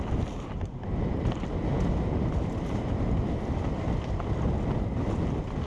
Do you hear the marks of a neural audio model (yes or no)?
no